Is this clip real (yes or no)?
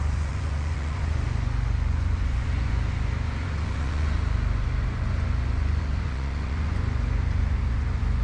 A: no